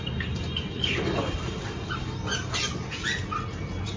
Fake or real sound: real